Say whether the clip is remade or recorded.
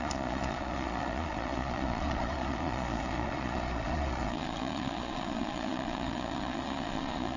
remade